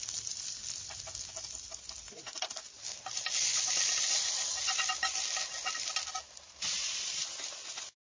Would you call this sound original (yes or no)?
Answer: yes